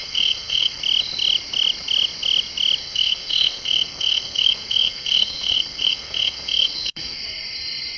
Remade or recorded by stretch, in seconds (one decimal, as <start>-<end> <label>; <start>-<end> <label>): 0.0-0.8 remade; 0.8-2.8 recorded; 2.8-7.2 remade; 7.2-8.0 recorded